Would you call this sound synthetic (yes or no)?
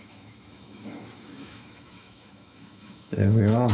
yes